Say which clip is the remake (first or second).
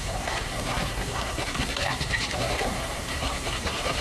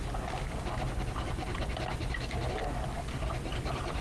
first